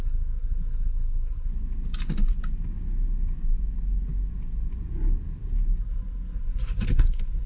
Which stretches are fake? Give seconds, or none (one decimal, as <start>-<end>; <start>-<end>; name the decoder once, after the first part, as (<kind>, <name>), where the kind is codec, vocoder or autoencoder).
0.0-1.5 (codec, SNAC); 5.8-7.5